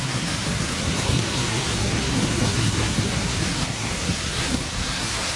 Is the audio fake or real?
fake